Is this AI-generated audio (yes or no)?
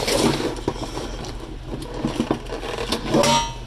no